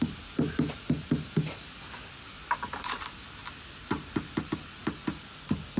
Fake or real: real